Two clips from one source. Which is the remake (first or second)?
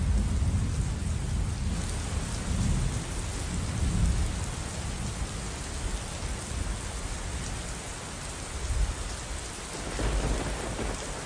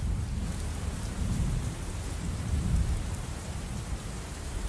second